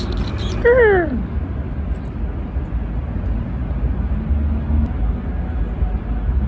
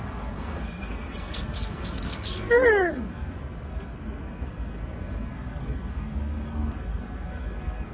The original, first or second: first